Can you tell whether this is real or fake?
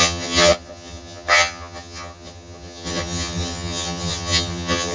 fake